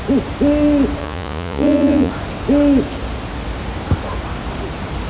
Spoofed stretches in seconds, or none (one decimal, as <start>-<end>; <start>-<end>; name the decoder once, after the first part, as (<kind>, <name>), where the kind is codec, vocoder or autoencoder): 1.0-2.1 (vocoder, Vocos)